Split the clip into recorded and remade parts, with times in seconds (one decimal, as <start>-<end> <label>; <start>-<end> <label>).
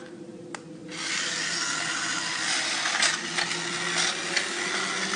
0.0-5.2 recorded